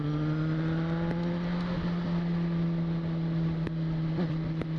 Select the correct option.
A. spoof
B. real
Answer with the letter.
B